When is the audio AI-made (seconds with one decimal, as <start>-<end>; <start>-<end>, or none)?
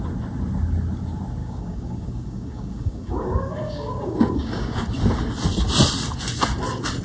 1.4-4.9